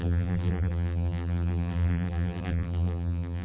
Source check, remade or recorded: remade